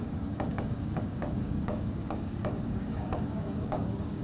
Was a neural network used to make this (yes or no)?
yes